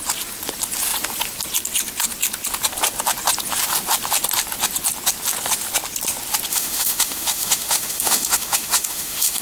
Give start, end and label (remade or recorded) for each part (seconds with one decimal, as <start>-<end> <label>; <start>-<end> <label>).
0.0-6.5 recorded; 6.5-9.4 remade